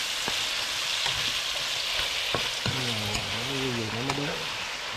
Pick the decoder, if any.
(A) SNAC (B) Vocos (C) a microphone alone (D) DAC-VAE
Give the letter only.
C